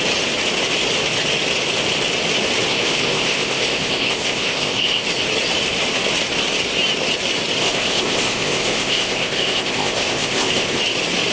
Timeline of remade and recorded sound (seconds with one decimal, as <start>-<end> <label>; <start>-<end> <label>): 0.0-2.7 recorded; 2.7-5.0 remade; 5.0-7.6 recorded; 7.6-10.8 remade; 10.8-11.3 recorded